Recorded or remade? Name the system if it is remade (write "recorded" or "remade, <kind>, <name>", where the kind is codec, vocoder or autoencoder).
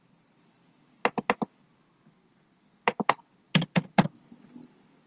recorded